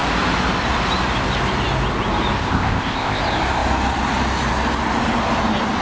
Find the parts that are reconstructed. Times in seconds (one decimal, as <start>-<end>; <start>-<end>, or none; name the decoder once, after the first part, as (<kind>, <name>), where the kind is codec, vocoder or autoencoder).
2.4-3.2 (codec, ZipCodec)